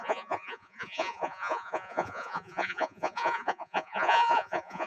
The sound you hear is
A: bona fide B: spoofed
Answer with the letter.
B